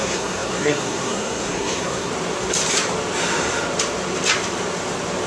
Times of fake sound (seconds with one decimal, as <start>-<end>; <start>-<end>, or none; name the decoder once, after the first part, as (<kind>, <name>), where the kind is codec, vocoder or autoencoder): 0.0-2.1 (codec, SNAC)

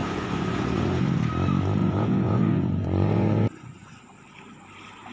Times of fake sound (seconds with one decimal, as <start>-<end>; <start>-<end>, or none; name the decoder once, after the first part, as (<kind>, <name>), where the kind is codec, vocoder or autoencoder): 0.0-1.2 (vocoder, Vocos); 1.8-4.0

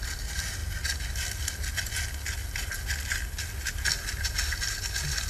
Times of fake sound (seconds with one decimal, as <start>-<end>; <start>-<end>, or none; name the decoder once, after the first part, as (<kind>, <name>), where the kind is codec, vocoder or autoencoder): none

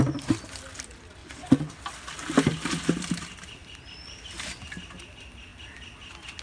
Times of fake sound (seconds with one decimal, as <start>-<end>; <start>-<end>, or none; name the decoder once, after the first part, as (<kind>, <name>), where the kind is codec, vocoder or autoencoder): 1.2-1.7 (vocoder, WaveNeXt)

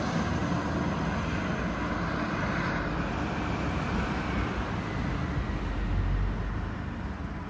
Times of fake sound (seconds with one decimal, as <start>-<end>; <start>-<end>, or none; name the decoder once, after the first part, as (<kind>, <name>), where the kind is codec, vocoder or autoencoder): none

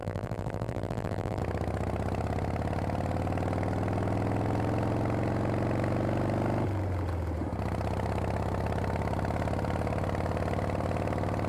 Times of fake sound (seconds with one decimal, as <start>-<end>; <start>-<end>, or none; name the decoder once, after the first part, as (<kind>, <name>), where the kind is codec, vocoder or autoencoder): 0.0-1.4 (vocoder, BigVGAN v2)

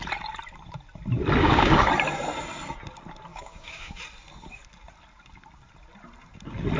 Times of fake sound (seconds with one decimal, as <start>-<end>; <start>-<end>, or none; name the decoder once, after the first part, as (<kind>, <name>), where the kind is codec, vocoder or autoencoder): 1.4-1.9 (codec, DAC); 3.3-4.0

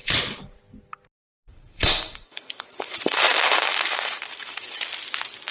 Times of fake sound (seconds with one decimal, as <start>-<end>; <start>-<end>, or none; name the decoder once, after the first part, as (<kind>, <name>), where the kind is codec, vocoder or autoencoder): 0.0-0.6 (vocoder, BigVGAN v2); 1.5-4.8